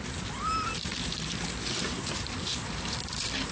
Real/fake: real